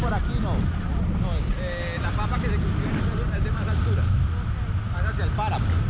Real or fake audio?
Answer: real